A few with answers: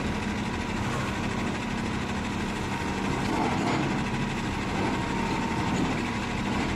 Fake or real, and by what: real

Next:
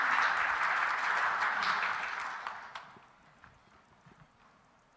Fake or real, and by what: real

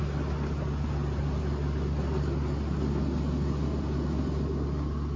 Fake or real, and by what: real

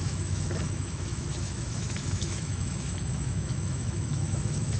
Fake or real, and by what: fake, autoencoder, DAC-VAE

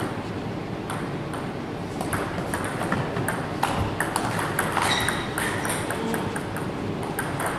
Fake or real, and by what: real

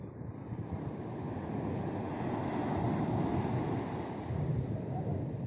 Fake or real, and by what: real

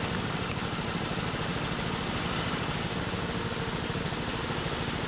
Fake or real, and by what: real